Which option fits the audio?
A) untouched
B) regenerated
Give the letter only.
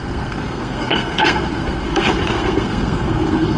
B